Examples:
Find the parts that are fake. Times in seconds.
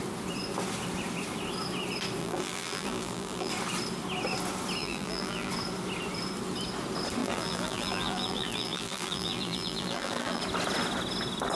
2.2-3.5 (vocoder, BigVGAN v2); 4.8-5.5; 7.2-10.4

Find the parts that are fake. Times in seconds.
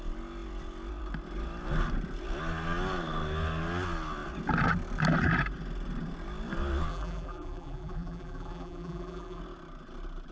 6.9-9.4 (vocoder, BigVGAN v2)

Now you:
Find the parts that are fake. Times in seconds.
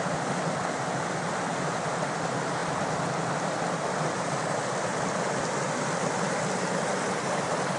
none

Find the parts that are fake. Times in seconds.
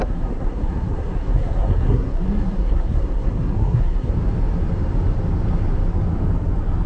0.0-4.1 (codec, SNAC)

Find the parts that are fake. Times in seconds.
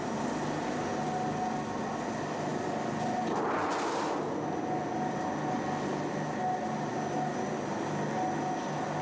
none